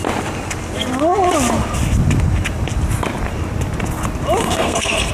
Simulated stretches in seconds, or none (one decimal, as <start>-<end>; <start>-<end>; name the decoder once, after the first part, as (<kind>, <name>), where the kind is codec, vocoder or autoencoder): 4.4-5.1 (codec, SNAC)